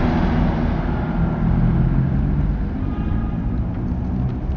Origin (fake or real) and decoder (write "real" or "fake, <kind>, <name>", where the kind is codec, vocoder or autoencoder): real